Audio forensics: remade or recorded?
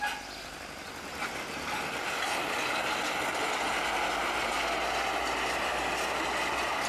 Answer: recorded